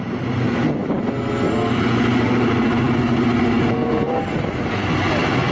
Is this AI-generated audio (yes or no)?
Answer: no